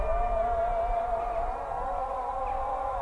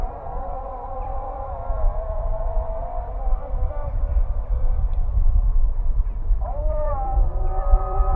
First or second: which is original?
first